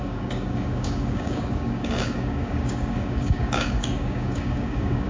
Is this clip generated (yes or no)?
yes